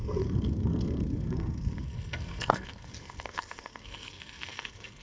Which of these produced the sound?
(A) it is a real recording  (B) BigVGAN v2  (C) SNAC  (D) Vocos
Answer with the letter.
C